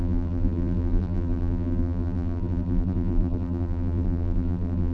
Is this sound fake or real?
fake